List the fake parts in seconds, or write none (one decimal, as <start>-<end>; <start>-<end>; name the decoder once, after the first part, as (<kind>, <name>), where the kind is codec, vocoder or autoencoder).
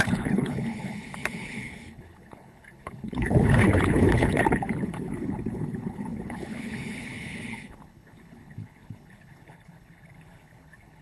0.0-11.0 (codec, HILCodec)